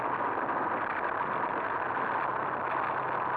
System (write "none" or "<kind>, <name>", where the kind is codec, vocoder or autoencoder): none